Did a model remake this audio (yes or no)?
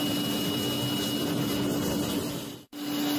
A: no